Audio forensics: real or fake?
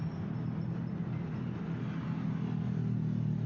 real